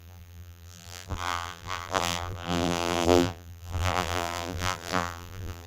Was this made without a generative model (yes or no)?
no